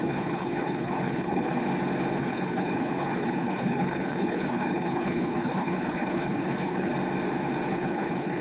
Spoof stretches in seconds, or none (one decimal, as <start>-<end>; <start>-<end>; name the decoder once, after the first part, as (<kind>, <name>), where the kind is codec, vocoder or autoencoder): 0.0-1.6 (codec, HILCodec); 2.2-6.9; 7.7-8.4